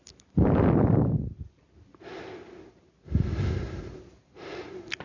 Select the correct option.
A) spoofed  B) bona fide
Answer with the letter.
B